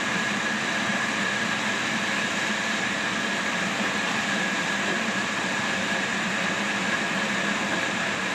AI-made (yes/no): yes